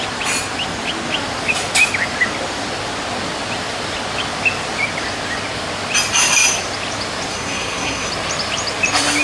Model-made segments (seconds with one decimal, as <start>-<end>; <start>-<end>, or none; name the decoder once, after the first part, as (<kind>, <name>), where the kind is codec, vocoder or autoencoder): 7.3-8.1 (codec, SNAC)